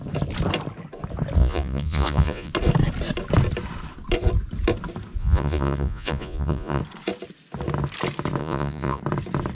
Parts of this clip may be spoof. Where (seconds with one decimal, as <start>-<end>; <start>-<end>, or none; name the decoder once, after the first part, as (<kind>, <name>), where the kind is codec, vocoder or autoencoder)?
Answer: 1.4-2.5 (vocoder, Vocos); 5.2-6.8; 8.4-9.0